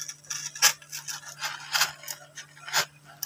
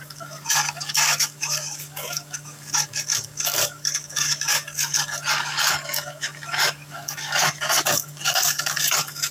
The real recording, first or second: first